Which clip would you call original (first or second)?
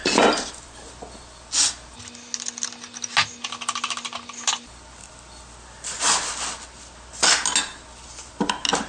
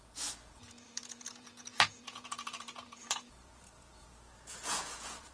first